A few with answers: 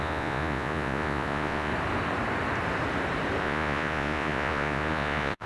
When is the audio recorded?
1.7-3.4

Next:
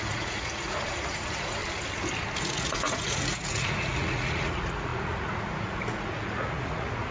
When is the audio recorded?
1.6-2.4

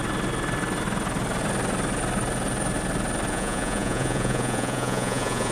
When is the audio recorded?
0.0-3.3

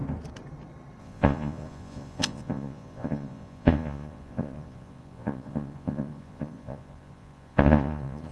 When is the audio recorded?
0.0-1.0

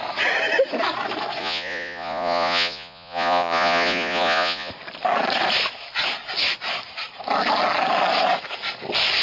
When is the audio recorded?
0.0-1.4; 4.7-9.2